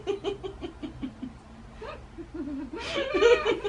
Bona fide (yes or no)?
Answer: yes